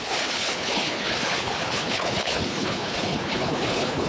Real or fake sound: fake